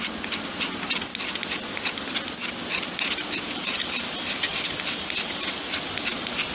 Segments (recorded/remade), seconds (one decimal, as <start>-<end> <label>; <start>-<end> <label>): 0.0-6.5 recorded